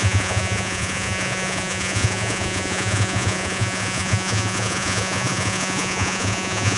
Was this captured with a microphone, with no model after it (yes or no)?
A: no